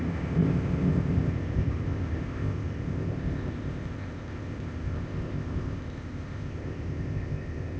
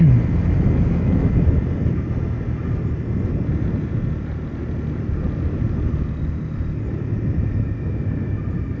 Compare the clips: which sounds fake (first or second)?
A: first